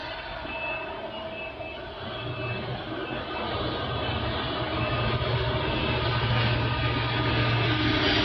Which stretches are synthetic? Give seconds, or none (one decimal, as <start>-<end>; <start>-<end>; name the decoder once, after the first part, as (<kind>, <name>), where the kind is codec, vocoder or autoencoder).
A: none